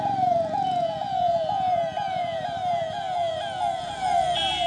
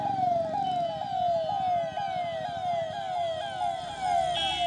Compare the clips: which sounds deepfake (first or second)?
first